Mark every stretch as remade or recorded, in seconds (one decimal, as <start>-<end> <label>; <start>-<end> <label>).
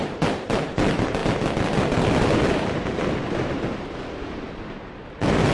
0.0-5.5 remade